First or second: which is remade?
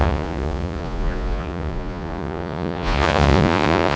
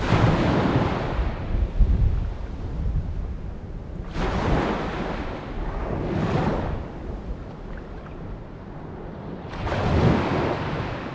first